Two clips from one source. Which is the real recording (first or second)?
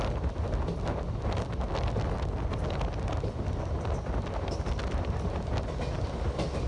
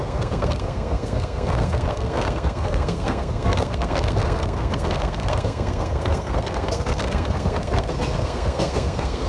first